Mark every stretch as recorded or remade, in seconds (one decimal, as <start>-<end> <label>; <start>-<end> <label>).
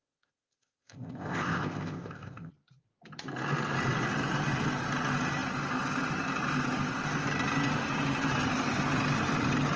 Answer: 0.0-2.5 remade; 2.5-9.8 recorded